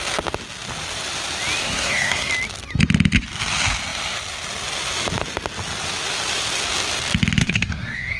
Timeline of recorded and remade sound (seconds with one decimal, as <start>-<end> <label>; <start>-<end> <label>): 0.0-1.6 recorded; 1.6-2.3 remade; 2.3-7.4 recorded; 7.4-8.2 remade